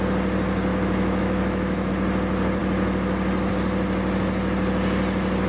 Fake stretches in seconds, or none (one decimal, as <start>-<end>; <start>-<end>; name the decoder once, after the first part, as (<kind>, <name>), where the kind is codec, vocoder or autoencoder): 0.7-1.9 (autoencoder, DAC-VAE)